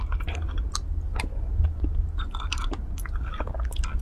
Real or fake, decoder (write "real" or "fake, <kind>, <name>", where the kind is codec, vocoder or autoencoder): real